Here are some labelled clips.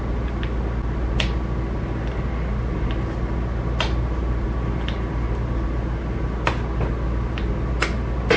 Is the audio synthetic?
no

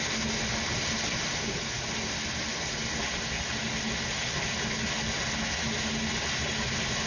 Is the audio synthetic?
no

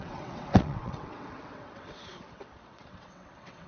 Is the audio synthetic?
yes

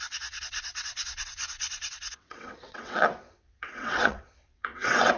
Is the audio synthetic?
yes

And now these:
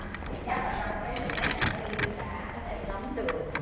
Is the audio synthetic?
no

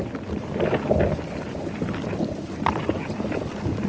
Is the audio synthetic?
no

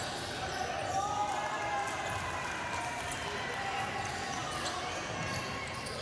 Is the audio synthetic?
no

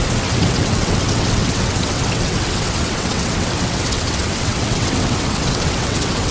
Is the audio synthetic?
yes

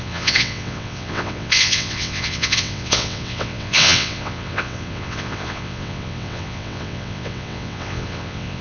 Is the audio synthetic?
yes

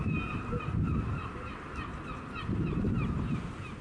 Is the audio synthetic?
no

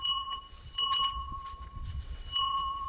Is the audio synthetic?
yes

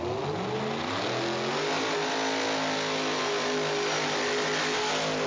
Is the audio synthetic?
no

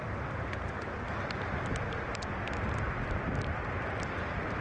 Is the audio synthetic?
no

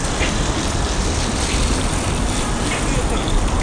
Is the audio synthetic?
no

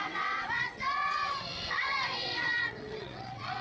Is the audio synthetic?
yes